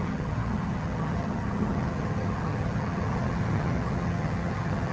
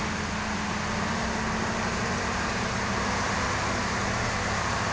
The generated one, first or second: first